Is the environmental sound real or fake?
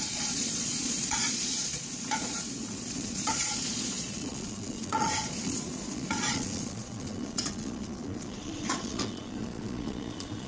fake